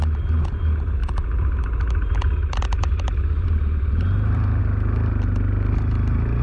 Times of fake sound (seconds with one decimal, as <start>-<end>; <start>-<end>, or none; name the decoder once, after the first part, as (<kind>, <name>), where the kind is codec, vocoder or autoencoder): 1.0-4.6 (vocoder, BigVGAN v2)